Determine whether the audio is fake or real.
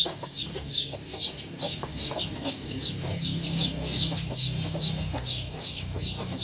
fake